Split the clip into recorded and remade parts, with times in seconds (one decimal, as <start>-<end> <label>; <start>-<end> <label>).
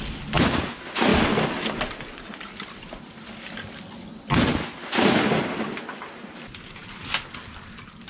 0.0-8.1 recorded